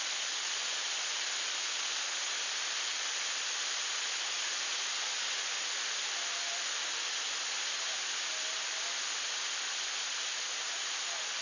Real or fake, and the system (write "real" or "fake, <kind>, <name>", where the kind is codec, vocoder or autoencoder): real